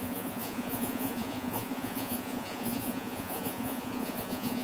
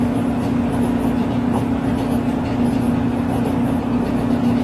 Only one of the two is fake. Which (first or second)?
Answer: first